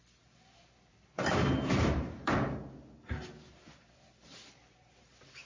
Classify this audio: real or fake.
fake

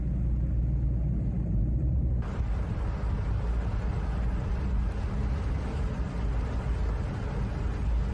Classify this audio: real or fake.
real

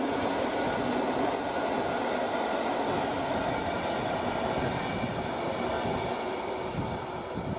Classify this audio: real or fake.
real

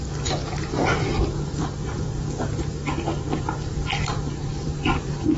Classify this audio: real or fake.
fake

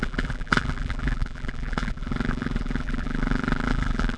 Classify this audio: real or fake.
fake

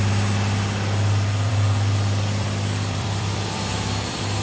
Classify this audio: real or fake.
fake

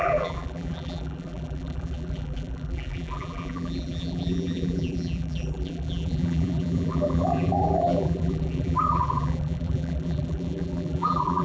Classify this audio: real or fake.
fake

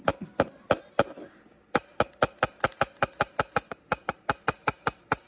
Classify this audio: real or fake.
fake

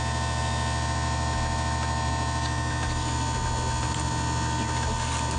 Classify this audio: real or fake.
real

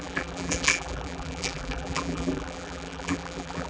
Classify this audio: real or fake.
fake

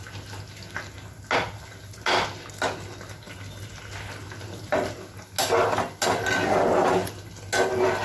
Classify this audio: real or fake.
real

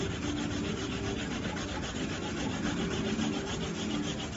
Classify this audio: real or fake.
real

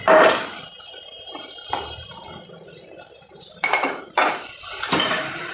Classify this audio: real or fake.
fake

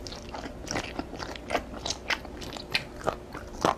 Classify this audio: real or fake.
real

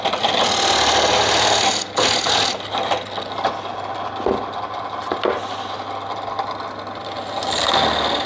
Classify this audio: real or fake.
real